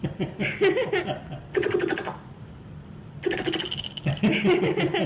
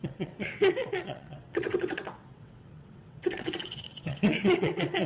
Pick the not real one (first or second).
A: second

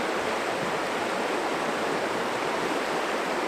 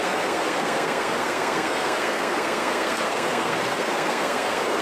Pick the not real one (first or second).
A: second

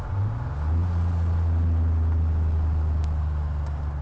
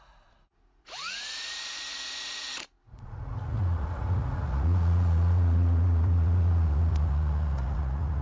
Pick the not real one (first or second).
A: second